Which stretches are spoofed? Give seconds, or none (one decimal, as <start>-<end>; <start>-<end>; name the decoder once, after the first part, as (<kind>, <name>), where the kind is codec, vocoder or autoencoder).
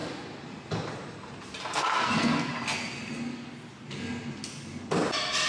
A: 1.7-2.5 (codec, SNAC)